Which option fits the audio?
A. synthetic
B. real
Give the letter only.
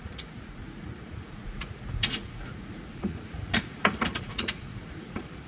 A